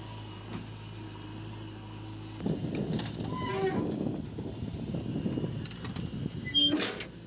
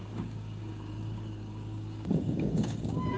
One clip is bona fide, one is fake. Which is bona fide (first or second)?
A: first